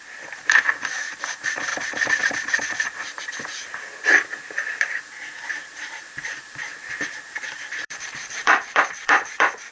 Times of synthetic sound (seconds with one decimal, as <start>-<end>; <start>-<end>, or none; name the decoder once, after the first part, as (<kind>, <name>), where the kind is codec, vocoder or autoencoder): 0.0-1.7 (vocoder, BigVGAN v2); 2.2-9.7